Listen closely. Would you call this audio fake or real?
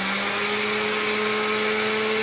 real